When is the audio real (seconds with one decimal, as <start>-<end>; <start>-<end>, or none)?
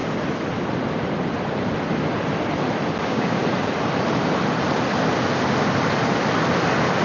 0.0-3.0; 3.4-7.0